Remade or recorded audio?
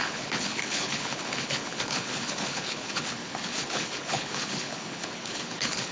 remade